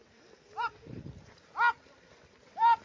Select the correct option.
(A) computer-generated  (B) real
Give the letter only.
B